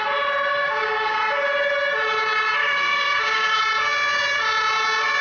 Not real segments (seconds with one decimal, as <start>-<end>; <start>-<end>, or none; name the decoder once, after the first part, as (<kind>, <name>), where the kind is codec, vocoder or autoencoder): 0.5-1.2 (codec, DAC); 2.6-3.6